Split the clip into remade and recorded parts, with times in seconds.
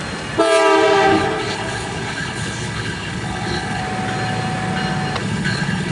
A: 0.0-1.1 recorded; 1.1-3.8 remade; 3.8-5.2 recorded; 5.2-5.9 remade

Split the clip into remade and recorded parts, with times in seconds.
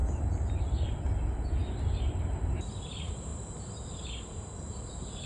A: 0.0-1.6 recorded; 1.6-2.9 remade; 2.9-3.3 recorded; 3.3-3.9 remade; 3.9-5.3 recorded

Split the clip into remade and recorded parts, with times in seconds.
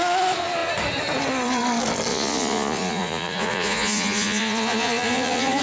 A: 0.0-2.1 recorded; 2.1-5.6 remade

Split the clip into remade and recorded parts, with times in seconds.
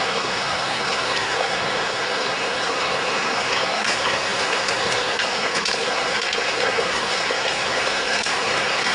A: 0.0-8.9 remade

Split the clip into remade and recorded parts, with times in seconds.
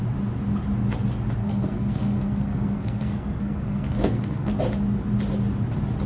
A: 0.0-1.4 recorded; 1.4-4.5 remade; 4.5-6.1 recorded